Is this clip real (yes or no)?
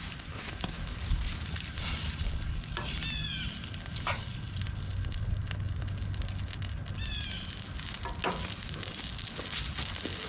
yes